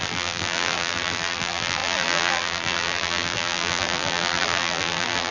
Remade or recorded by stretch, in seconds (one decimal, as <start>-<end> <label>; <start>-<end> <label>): 0.0-5.3 remade